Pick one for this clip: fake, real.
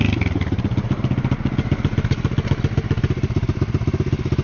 real